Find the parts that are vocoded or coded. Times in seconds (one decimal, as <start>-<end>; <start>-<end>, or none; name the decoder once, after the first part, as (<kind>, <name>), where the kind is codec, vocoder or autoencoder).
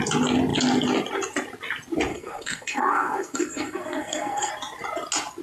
2.1-4.5 (codec, SNAC)